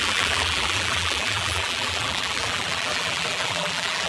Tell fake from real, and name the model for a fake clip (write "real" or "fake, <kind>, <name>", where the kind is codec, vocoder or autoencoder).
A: fake, vocoder, BigVGAN v2